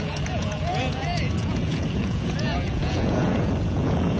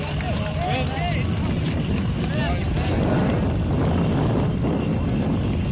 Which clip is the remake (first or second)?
first